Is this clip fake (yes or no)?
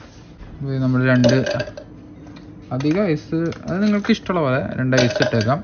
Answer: no